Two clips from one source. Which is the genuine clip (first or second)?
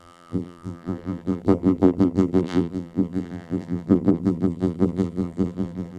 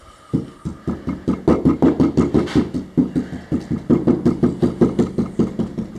second